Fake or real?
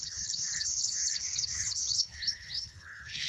fake